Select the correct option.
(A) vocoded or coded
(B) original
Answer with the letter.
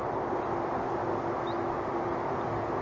B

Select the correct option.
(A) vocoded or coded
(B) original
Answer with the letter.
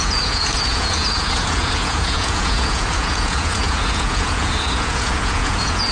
A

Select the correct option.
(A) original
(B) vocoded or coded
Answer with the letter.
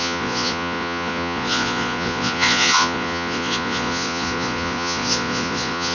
B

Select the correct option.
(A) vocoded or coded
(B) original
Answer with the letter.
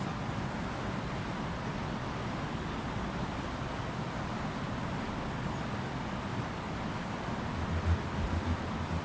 B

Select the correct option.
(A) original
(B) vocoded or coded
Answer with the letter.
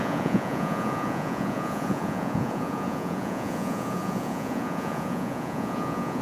B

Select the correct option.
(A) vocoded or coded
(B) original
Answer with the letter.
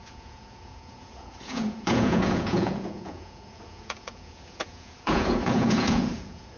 A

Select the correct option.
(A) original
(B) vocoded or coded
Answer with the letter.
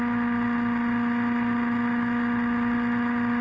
A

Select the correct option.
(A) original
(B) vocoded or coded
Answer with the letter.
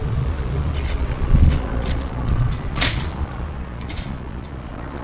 B